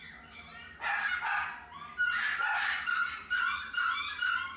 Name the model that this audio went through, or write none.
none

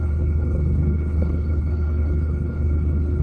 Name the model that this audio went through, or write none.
codec, HILCodec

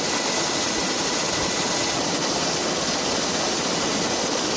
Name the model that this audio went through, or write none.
none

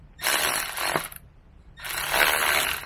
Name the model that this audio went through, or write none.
none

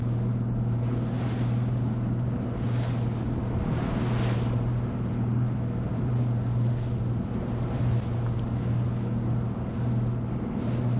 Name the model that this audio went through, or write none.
none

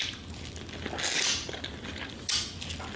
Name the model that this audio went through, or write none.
none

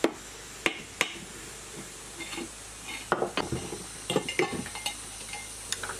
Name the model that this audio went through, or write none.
none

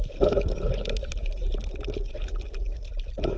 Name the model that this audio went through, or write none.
none